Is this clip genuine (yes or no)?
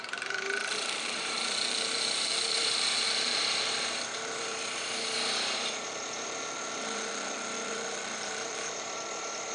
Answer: no